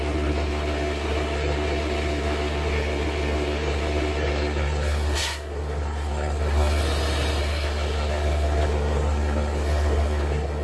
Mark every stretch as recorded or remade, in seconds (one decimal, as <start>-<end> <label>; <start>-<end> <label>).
0.0-6.8 remade; 6.8-7.4 recorded; 7.4-10.6 remade